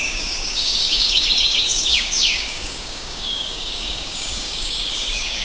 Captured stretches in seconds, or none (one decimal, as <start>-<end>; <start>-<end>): none